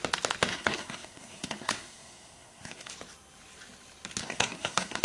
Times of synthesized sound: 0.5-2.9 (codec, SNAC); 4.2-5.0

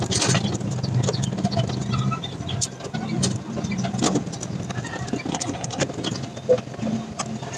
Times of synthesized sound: 5.3-5.8 (codec, SNAC)

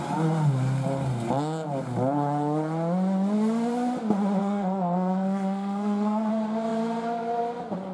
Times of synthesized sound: 4.4-6.3 (codec, SNAC)

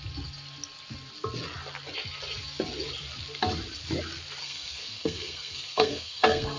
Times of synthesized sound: 4.4-6.6 (codec, SNAC)

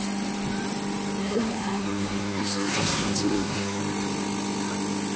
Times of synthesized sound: 1.2-3.8 (codec, SNAC)